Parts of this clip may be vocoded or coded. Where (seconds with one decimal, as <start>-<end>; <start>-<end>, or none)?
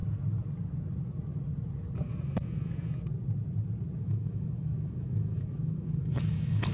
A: 4.0-6.7